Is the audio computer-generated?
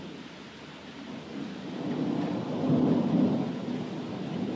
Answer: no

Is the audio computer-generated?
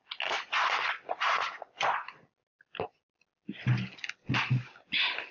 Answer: no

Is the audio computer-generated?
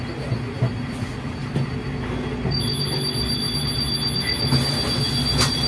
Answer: no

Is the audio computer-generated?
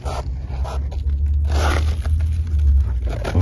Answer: no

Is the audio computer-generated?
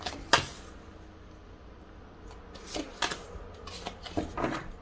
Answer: no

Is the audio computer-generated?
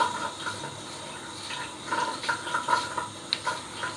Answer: no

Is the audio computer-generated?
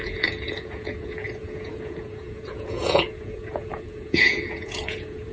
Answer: yes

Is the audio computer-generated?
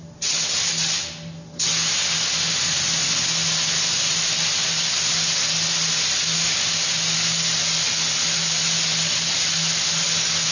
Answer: no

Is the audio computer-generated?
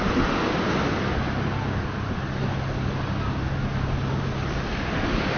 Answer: no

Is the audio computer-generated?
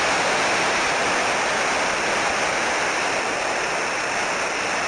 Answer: no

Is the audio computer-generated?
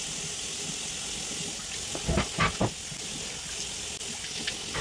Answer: no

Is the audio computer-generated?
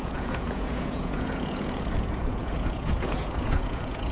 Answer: yes